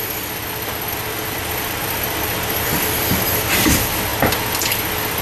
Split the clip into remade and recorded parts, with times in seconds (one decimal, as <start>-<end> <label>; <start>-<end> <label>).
0.0-0.9 recorded; 0.9-4.1 remade; 4.1-5.2 recorded